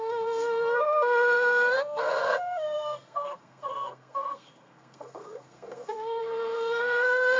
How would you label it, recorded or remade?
remade